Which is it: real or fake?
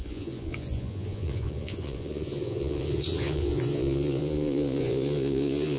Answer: fake